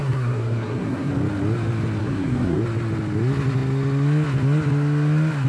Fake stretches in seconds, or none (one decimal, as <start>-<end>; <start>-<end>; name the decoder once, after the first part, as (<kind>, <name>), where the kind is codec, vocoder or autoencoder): 0.0-1.1 (codec, SNAC); 2.0-2.6